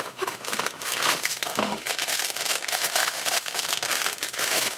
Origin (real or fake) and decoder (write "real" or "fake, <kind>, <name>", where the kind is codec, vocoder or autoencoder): fake, autoencoder, DAC-VAE